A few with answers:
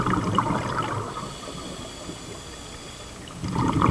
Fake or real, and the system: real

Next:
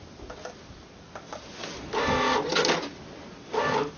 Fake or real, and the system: real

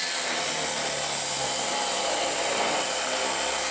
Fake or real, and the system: real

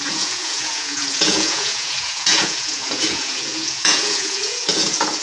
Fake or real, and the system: fake, vocoder, Vocos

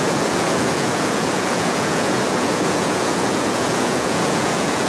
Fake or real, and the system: fake, vocoder, Vocos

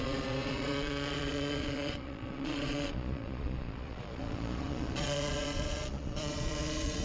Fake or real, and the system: fake, vocoder, Vocos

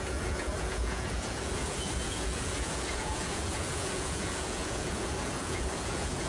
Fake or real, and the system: fake, vocoder, Vocos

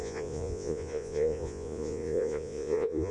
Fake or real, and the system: fake, vocoder, Vocos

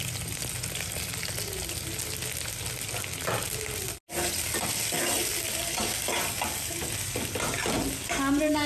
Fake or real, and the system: real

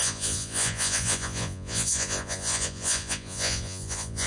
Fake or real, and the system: fake, vocoder, Vocos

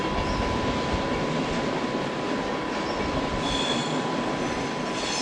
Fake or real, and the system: real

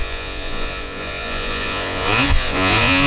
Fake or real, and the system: fake, vocoder, Vocos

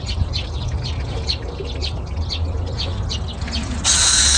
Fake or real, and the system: real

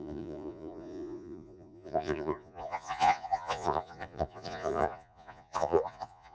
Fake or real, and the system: fake, vocoder, Vocos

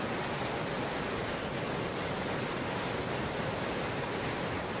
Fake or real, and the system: real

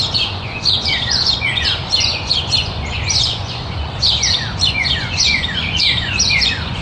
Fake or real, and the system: fake, vocoder, Vocos